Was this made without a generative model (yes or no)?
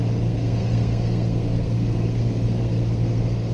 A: no